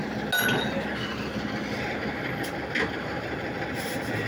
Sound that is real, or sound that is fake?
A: real